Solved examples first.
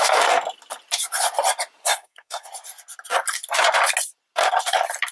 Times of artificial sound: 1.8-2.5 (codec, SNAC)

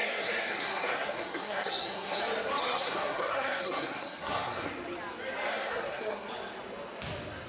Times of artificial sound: 0.0-2.2 (codec, SNAC); 2.6-4.7; 5.5-6.3